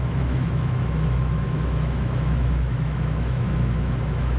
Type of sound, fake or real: fake